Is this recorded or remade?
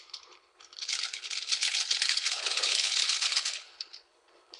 remade